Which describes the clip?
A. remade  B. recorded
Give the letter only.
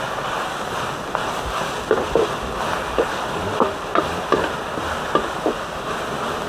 B